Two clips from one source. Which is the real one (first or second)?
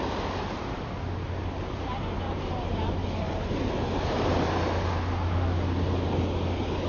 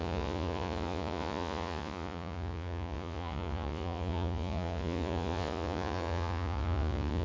first